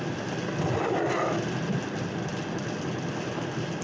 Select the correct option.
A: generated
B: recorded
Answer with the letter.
B